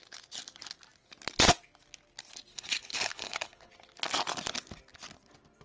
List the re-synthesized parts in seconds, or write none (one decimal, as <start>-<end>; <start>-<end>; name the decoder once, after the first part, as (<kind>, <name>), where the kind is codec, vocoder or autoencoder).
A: 2.5-3.7 (codec, HILCodec)